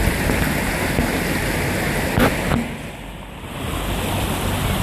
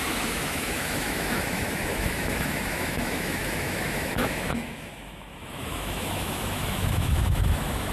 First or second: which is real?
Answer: first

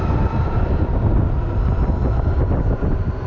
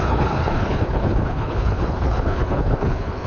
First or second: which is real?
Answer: first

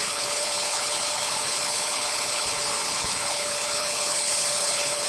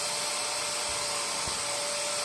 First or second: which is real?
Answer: second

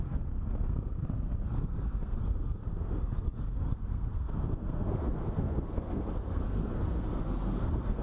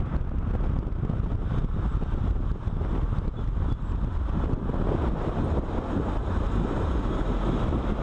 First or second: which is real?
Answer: second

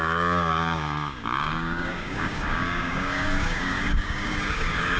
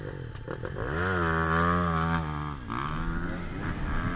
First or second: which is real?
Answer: second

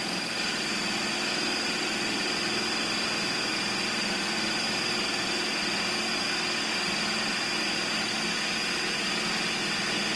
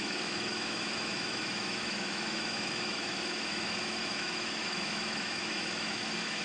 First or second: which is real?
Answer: first